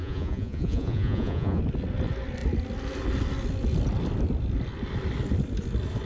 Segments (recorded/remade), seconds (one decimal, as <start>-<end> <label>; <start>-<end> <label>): 0.0-1.6 remade; 1.6-6.1 recorded